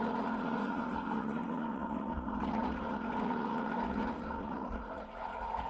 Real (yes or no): no